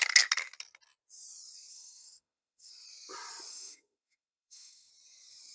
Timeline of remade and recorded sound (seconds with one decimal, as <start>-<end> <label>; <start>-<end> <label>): 0.0-1.7 recorded; 1.7-2.7 remade; 2.7-3.5 recorded; 3.5-4.9 remade; 4.9-5.5 recorded